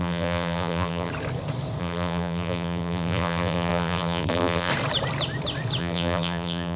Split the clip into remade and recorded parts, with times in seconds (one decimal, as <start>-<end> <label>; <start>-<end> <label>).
0.0-1.1 remade; 1.1-1.8 recorded; 1.8-4.7 remade; 4.7-5.8 recorded; 5.8-6.8 remade